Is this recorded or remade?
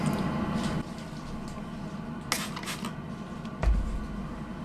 recorded